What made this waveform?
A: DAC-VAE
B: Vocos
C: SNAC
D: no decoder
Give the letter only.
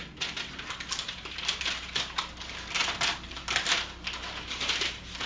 D